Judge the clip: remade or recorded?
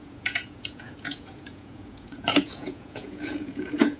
remade